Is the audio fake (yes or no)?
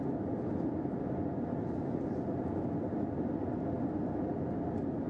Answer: no